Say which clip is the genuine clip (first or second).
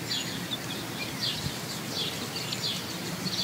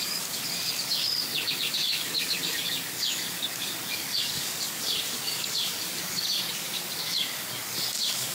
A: first